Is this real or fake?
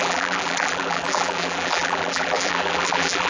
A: fake